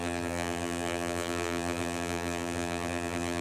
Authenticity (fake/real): fake